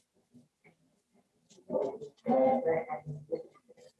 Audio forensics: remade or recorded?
recorded